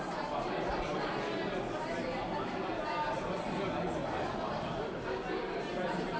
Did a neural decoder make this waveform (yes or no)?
no